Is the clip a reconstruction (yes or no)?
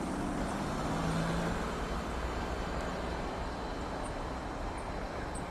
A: no